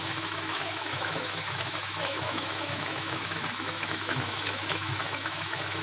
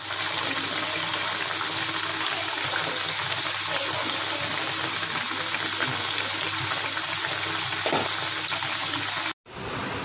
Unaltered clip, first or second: second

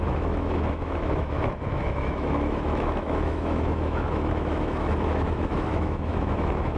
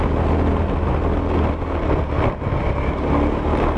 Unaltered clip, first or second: second